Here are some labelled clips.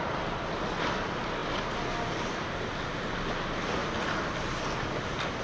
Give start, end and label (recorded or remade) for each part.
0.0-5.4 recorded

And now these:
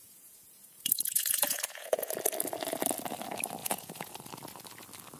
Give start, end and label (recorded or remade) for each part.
0.0-2.1 remade; 2.1-3.6 recorded; 3.6-4.1 remade; 4.1-5.2 recorded